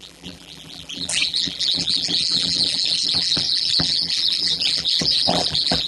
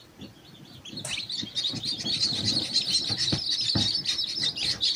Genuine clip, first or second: second